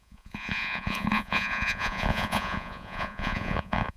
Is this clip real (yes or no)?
no